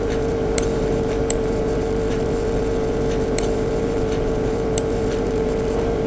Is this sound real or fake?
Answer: fake